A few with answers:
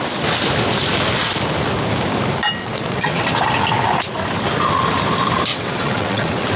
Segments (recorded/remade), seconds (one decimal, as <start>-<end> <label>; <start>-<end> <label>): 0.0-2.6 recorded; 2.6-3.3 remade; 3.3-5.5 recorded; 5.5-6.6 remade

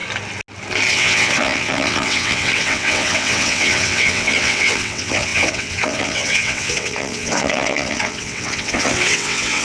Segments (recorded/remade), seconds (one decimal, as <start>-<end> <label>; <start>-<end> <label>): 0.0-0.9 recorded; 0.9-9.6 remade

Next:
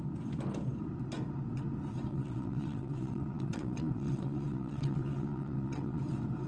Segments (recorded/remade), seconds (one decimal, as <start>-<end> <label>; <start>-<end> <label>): 0.0-2.1 recorded; 2.1-6.0 remade; 6.0-6.5 recorded

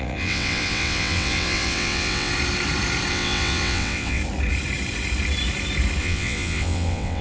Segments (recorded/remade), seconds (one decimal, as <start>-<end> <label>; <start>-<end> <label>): 0.0-2.3 remade; 2.3-3.1 recorded; 3.1-4.2 remade; 4.2-6.0 recorded; 6.0-7.2 remade

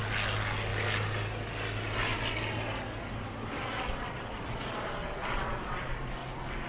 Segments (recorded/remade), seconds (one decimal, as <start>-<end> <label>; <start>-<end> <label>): 0.0-6.7 recorded

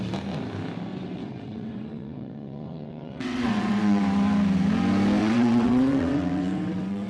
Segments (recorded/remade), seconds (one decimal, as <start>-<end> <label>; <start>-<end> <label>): 0.0-0.9 recorded; 0.9-4.0 remade; 4.0-5.2 recorded; 5.2-7.1 remade

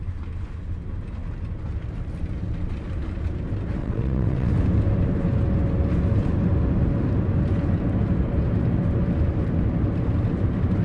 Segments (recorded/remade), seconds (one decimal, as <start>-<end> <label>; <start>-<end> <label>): 0.0-3.8 recorded; 3.8-4.5 remade; 4.5-10.8 recorded

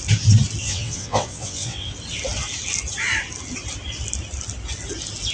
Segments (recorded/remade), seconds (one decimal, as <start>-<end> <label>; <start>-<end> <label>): 0.0-0.6 recorded; 0.6-1.9 remade; 1.9-5.3 recorded